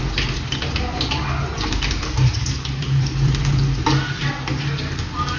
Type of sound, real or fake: real